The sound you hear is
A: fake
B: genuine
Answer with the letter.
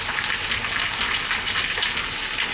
B